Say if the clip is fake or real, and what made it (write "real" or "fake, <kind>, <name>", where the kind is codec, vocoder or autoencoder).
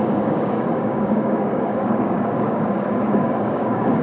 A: fake, codec, DAC